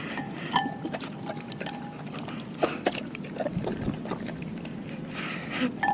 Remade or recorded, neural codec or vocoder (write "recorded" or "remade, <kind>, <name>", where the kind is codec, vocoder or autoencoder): recorded